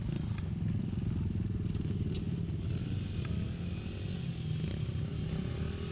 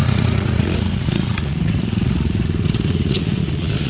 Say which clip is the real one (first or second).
first